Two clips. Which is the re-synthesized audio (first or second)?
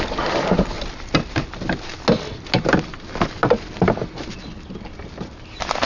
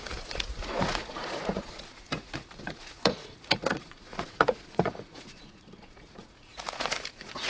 second